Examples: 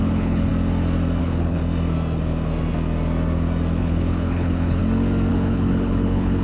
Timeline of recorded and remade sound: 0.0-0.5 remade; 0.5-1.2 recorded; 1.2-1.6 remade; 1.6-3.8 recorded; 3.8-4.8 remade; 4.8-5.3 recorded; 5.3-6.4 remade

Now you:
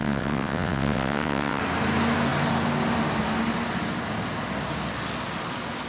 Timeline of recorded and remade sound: 0.0-1.6 remade; 1.6-5.9 recorded

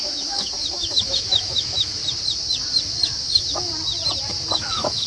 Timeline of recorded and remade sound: 0.0-2.0 remade; 2.0-2.8 recorded; 2.8-3.7 remade; 3.7-4.3 recorded; 4.3-5.1 remade

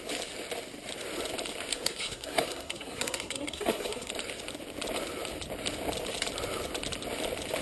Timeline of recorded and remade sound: 0.0-1.7 recorded; 1.7-4.1 remade; 4.1-7.6 recorded

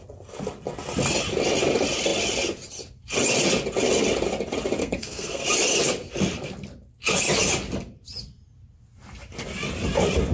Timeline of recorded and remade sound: 0.0-4.8 recorded; 4.8-5.4 remade; 5.4-10.3 recorded